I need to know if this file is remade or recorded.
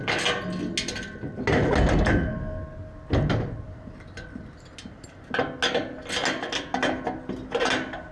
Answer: recorded